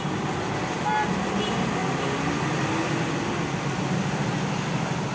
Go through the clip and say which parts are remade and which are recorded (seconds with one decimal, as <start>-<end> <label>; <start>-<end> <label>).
0.0-5.1 recorded